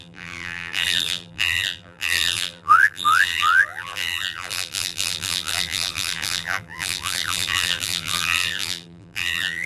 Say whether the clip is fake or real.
fake